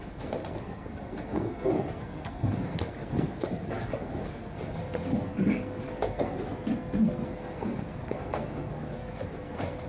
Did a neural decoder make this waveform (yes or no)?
yes